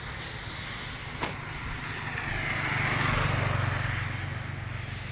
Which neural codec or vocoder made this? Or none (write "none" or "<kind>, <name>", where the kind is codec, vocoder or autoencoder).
none